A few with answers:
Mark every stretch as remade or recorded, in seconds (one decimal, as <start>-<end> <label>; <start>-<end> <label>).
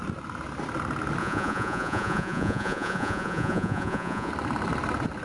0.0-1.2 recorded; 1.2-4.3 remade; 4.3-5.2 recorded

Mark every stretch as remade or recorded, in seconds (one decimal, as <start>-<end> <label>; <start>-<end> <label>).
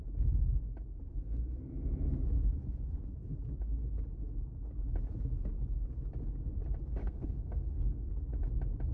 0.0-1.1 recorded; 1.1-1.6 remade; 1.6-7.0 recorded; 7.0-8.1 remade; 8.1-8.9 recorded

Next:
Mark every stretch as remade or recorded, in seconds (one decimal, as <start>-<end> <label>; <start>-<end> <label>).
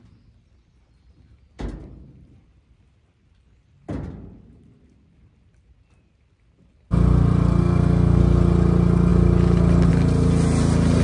0.0-7.6 recorded; 7.6-8.2 remade; 8.2-11.0 recorded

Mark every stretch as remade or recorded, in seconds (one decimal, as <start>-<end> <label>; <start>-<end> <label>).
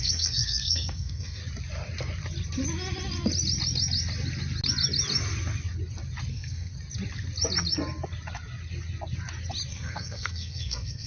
0.0-1.4 remade; 1.4-6.3 recorded; 6.3-6.7 remade; 6.7-9.7 recorded; 9.7-11.1 remade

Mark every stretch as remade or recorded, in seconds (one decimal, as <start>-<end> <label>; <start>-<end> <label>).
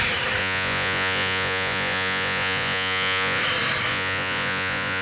0.0-0.4 recorded; 0.4-3.4 remade; 3.4-3.9 recorded; 3.9-5.0 remade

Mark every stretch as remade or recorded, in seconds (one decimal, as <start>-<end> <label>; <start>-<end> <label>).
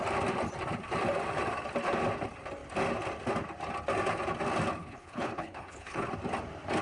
0.0-4.8 recorded; 4.8-6.1 remade; 6.1-6.8 recorded